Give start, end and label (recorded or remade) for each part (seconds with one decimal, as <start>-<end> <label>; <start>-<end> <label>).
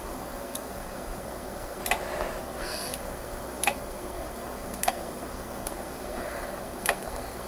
0.0-1.8 remade; 1.8-2.4 recorded; 2.4-7.5 remade